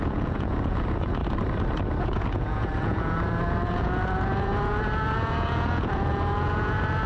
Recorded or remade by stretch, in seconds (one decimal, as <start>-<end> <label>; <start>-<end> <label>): 0.0-1.2 remade; 1.2-2.0 recorded; 2.0-7.1 remade